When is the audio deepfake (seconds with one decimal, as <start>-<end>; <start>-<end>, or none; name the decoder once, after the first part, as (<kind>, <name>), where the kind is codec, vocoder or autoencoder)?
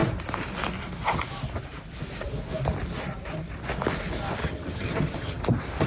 4.4-5.4 (vocoder, HiFi-GAN)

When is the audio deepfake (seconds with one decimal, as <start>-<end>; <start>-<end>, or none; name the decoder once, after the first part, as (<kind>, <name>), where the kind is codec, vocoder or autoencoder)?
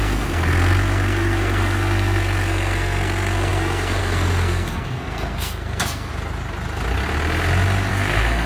0.0-6.1 (codec, SNAC); 7.9-8.5